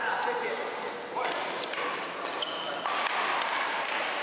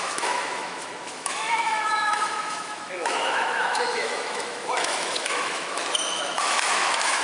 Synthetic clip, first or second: second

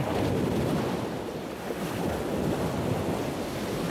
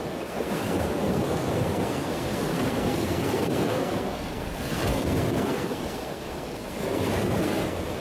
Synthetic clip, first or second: second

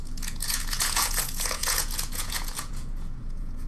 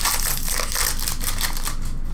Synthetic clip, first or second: first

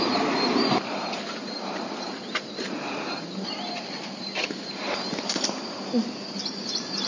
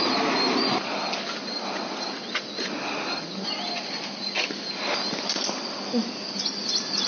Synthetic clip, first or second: first